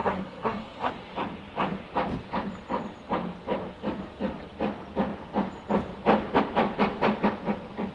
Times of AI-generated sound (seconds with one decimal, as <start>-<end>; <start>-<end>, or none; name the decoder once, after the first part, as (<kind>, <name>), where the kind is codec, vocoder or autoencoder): 0.0-0.9 (codec, SNAC)